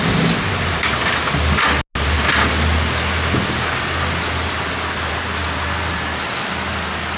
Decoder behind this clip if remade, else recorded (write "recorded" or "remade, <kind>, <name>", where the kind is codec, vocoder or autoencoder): recorded